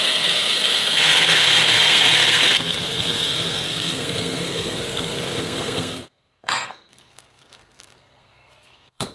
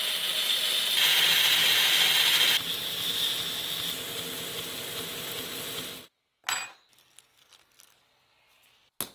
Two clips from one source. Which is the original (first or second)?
second